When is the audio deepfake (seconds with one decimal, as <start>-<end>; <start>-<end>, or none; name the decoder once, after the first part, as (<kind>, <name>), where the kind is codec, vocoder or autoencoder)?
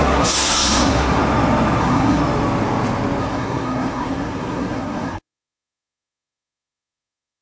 0.0-1.2 (codec, SNAC); 1.8-2.2; 3.2-7.4